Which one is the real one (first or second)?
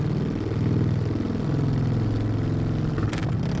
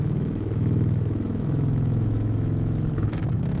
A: first